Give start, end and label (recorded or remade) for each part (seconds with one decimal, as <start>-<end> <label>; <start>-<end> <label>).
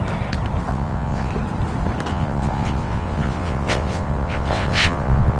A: 0.0-0.7 recorded; 0.7-1.3 remade; 1.3-2.1 recorded; 2.1-5.4 remade